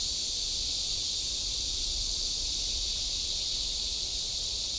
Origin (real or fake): real